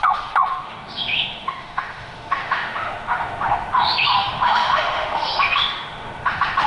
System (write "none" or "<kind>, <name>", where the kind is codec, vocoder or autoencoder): autoencoder, DAC-VAE